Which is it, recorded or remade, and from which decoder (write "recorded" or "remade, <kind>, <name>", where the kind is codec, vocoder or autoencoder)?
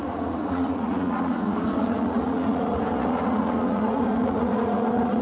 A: remade, vocoder, Vocos